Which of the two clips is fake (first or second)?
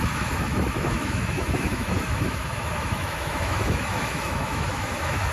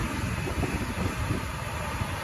first